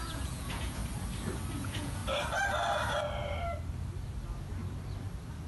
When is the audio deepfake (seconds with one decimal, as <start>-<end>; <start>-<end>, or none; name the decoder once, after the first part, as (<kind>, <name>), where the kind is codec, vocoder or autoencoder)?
0.0-0.8 (vocoder, Vocos); 1.6-2.0